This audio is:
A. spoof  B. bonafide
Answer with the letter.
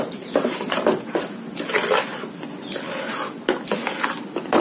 B